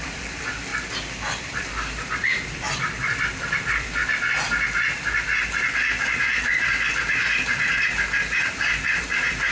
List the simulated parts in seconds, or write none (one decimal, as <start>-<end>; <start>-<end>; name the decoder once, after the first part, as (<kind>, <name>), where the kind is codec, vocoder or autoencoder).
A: 0.0-0.7 (vocoder, BigVGAN v2); 1.4-4.0; 6.0-6.5; 8.5-9.5